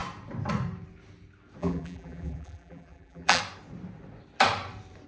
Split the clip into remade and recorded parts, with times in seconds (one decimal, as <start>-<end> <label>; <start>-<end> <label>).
0.0-1.6 recorded; 1.6-3.4 remade; 3.4-5.1 recorded